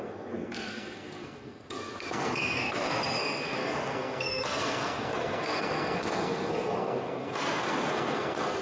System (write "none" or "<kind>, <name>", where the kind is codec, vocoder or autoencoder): codec, SNAC